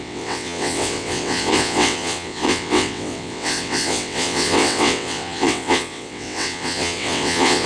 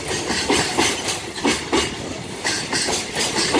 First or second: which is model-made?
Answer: first